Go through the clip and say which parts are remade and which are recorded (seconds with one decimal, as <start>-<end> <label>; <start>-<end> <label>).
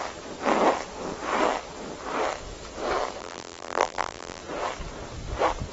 0.0-3.2 recorded; 3.2-4.4 remade; 4.4-5.7 recorded